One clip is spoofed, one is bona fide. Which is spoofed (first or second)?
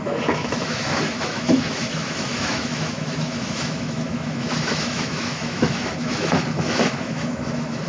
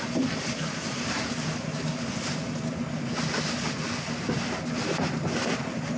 first